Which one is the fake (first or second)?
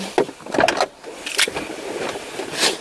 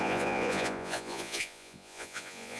second